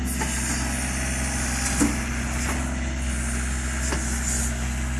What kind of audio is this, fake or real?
real